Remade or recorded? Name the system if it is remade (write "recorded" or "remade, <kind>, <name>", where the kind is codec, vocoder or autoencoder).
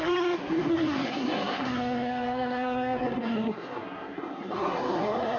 remade, codec, SNAC